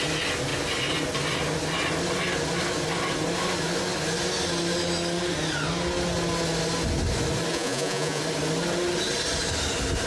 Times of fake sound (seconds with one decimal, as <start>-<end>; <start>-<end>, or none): 7.5-8.2